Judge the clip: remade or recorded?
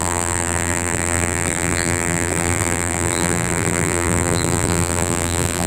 remade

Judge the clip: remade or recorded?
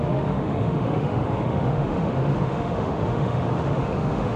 remade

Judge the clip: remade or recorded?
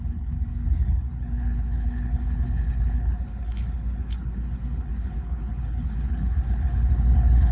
remade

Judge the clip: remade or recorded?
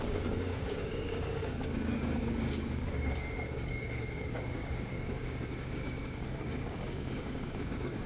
remade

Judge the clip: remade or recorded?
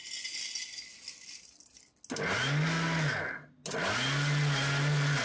recorded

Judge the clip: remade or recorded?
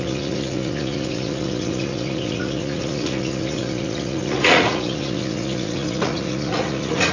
remade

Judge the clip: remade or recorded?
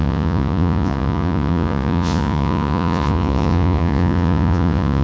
remade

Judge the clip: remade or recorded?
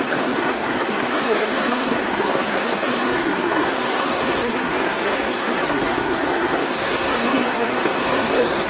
remade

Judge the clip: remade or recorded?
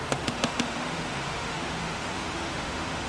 remade